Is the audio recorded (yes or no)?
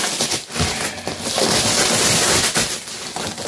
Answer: yes